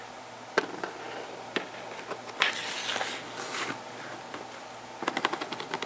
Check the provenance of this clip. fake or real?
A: real